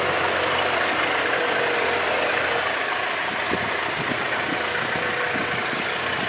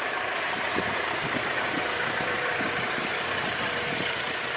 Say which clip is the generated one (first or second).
second